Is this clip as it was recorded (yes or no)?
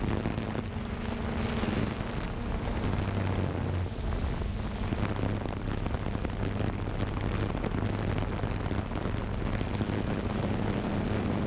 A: yes